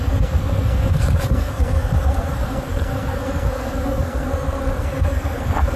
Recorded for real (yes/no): no